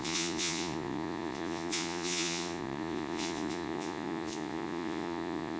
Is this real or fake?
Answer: fake